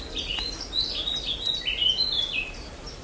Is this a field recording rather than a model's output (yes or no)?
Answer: yes